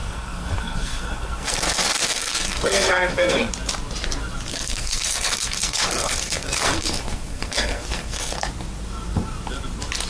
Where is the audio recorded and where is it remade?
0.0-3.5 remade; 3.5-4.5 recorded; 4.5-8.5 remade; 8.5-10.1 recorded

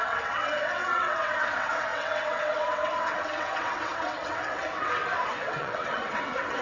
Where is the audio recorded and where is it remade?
0.0-6.6 remade

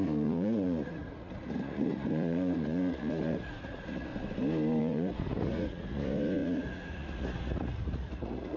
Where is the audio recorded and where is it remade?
0.0-4.1 remade; 4.1-4.8 recorded; 4.8-8.6 remade

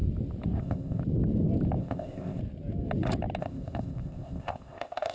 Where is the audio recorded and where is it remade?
0.0-0.6 recorded; 0.6-1.0 remade; 1.0-1.8 recorded; 1.8-2.4 remade; 2.4-3.4 recorded; 3.4-5.1 remade

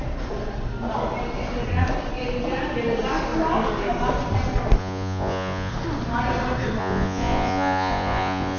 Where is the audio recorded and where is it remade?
0.0-4.8 recorded; 4.8-5.7 remade; 5.7-6.8 recorded; 6.8-8.6 remade

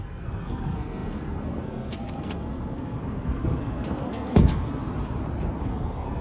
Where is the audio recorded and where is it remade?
0.0-4.8 remade; 4.8-5.6 recorded; 5.6-6.2 remade

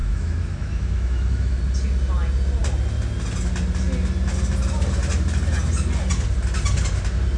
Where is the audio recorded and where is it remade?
0.0-1.6 remade; 1.6-7.4 recorded